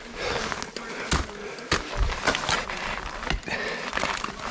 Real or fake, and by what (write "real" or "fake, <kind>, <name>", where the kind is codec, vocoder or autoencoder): real